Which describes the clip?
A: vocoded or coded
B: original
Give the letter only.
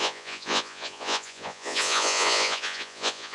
A